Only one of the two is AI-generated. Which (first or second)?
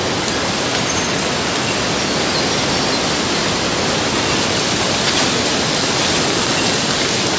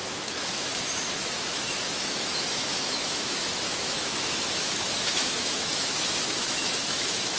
second